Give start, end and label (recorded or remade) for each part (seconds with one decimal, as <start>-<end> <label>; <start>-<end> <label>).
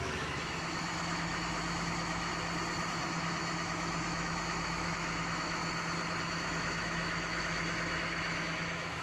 0.0-2.3 remade; 2.3-2.9 recorded; 2.9-5.6 remade; 5.6-6.2 recorded; 6.2-9.0 remade